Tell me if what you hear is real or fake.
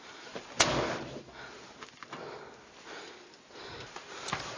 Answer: real